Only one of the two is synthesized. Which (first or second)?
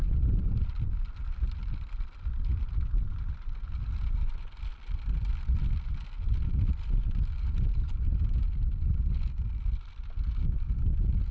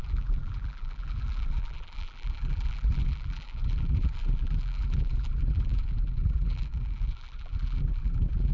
second